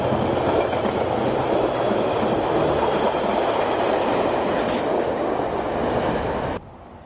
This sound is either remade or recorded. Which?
recorded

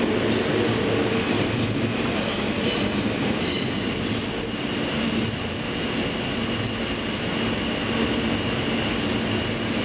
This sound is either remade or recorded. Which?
recorded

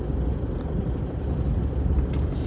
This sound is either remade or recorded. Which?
recorded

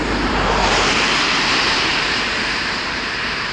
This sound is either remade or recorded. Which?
remade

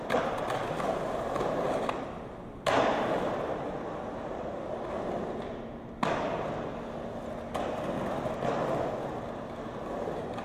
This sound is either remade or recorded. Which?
recorded